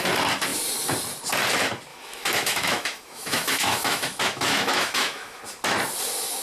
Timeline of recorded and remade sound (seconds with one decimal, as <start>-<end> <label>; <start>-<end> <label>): 0.0-1.9 recorded; 1.9-5.4 remade; 5.4-6.4 recorded